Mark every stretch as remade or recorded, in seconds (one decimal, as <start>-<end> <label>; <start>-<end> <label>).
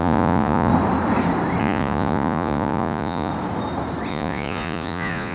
0.0-0.7 remade; 0.7-1.6 recorded; 1.6-3.3 remade; 3.3-4.1 recorded; 4.1-5.3 remade